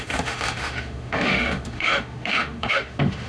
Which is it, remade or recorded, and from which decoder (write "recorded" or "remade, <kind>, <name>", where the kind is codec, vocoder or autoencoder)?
remade, autoencoder, DAC-VAE